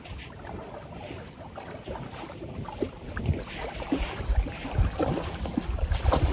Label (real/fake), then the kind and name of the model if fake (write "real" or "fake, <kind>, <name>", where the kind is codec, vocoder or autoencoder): real